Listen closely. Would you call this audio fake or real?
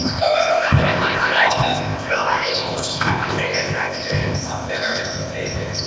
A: fake